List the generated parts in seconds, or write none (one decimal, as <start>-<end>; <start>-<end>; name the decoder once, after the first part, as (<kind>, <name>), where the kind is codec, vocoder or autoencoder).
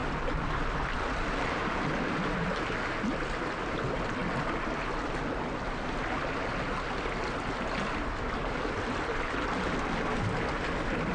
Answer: none